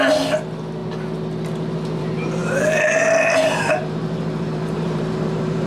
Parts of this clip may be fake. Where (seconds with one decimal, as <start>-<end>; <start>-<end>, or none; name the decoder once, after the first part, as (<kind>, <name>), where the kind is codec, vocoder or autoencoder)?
2.4-5.7 (vocoder, BigVGAN v2)

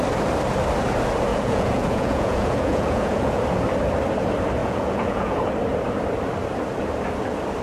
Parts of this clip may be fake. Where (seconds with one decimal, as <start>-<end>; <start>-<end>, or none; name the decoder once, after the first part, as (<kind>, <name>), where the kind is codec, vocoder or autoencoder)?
1.3-3.4 (vocoder, Vocos); 4.6-5.5

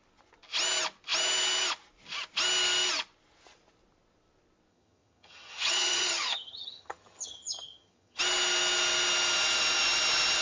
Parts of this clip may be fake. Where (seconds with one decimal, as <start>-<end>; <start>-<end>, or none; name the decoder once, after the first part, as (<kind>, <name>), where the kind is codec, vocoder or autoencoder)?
4.7-8.2 (vocoder, HiFi-GAN)

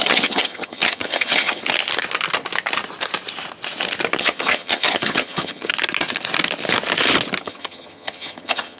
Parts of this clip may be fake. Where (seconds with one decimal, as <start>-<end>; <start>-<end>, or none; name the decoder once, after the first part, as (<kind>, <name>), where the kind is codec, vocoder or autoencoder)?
0.0-1.6 (vocoder, HiFi-GAN); 4.2-5.7; 7.4-8.8